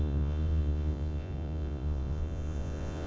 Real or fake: fake